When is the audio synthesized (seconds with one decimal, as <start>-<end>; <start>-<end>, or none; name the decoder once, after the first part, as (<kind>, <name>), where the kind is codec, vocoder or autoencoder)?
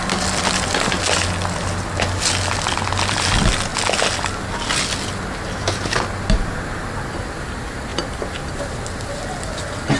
none